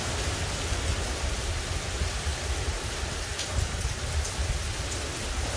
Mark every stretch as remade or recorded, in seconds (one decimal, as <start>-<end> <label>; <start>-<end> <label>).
0.0-5.6 recorded